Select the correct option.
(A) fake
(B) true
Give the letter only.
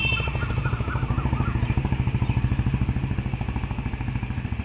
B